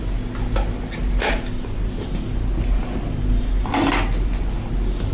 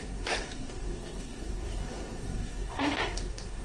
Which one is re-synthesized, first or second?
second